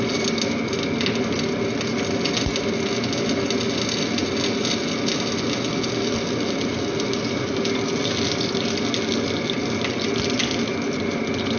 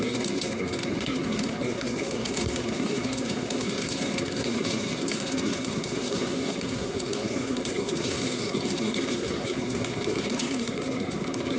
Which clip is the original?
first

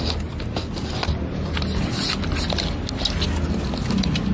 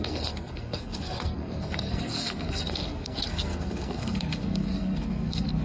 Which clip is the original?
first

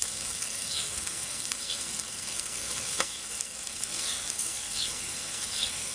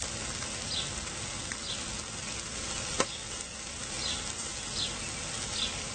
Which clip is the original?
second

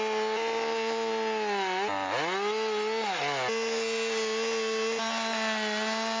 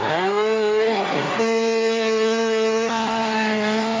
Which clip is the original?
first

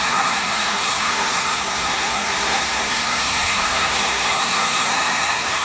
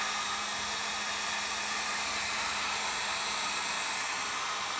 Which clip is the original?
second